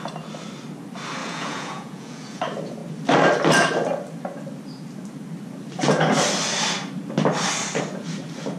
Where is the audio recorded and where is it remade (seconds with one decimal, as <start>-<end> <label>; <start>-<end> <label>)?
0.0-1.2 recorded; 1.2-2.4 remade; 2.4-8.6 recorded